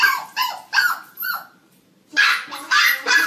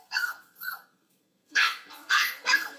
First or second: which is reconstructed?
second